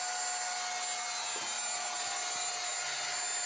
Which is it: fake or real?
real